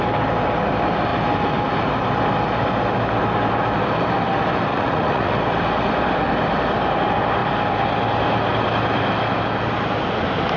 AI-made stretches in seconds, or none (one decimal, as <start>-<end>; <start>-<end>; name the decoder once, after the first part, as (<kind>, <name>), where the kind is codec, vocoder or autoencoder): 4.7-5.3 (vocoder, Vocos)

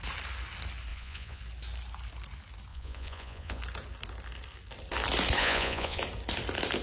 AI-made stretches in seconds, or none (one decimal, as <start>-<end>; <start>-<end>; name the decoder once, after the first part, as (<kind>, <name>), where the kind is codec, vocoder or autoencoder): 0.9-1.4 (vocoder, Vocos); 2.7-3.6; 5.4-6.0

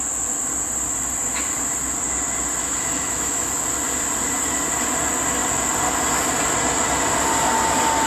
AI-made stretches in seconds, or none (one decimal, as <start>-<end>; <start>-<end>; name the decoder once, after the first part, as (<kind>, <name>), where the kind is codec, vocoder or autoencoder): 2.6-3.5 (autoencoder, DAC-VAE)

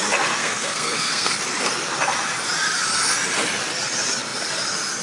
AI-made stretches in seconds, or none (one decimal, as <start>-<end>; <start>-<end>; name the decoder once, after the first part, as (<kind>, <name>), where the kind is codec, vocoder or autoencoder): 0.4-1.3 (codec, SNAC)

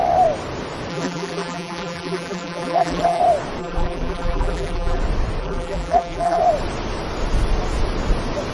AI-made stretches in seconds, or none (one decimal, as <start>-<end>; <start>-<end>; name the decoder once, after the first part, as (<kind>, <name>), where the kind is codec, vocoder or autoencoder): 0.9-3.2 (vocoder, BigVGAN v2); 3.6-5.0; 5.4-6.4